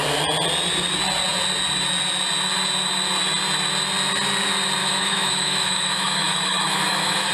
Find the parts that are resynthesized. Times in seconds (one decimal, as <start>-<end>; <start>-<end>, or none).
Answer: 4.8-7.3